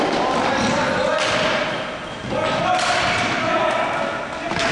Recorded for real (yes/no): yes